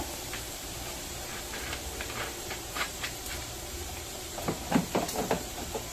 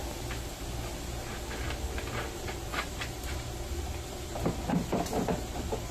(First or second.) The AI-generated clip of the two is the first